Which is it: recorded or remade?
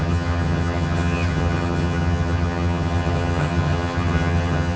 remade